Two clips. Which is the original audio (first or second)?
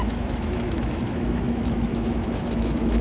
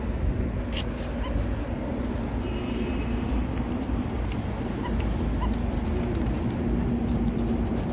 second